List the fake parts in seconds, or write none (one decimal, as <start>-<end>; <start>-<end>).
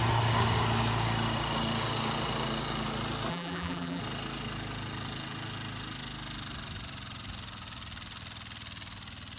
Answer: 3.3-4.0